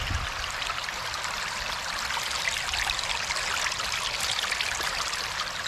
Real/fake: real